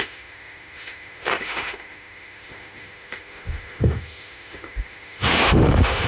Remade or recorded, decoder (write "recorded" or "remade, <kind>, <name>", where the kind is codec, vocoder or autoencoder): remade, autoencoder, DAC-VAE